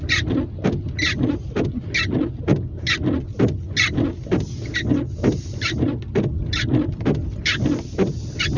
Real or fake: real